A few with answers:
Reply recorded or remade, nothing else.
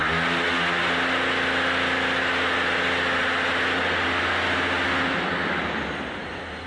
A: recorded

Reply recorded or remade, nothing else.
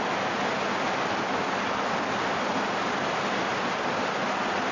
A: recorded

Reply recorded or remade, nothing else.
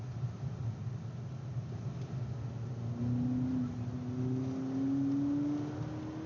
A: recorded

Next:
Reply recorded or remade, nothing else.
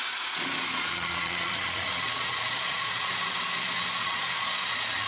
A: remade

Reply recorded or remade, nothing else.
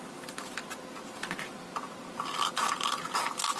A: recorded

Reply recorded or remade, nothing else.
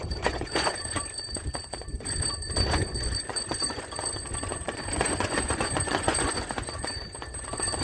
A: remade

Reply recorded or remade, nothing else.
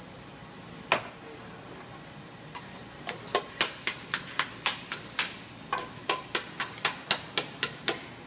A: recorded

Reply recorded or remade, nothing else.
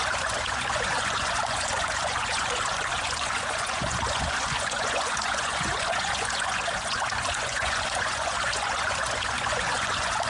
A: remade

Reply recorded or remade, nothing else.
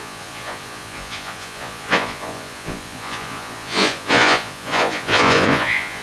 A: remade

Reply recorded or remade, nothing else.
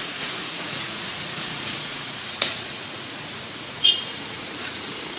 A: remade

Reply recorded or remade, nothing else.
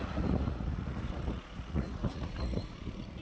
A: remade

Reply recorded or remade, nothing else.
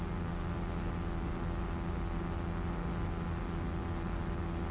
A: recorded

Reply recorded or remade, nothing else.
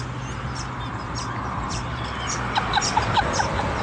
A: recorded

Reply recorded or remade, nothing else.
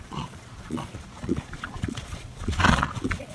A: remade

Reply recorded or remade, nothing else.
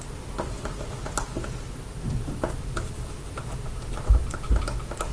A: recorded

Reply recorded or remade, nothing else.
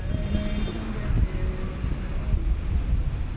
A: recorded